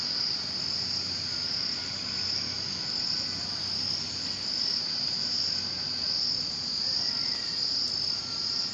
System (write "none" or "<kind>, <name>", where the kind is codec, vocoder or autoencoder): none